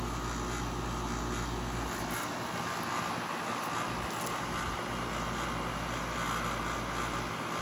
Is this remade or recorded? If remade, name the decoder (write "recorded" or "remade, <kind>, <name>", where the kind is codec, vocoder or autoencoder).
recorded